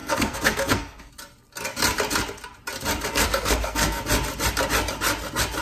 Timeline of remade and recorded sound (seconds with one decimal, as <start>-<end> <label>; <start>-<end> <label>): 0.0-1.1 remade; 1.1-3.1 recorded; 3.1-4.0 remade; 4.0-5.6 recorded